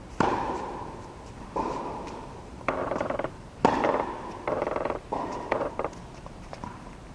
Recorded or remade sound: remade